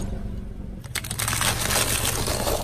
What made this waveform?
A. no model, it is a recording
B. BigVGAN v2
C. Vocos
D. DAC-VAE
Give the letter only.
A